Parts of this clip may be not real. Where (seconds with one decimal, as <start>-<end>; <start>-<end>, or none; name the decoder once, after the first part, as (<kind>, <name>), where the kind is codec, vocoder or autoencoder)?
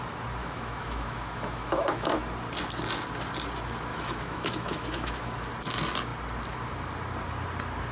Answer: 0.4-2.2 (autoencoder, DAC-VAE); 3.9-5.5